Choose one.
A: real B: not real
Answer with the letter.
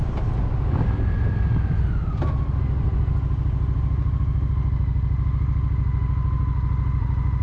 A